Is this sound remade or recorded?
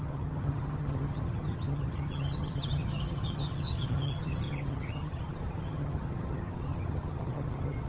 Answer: remade